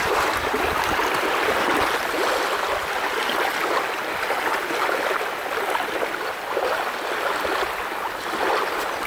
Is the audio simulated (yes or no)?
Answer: no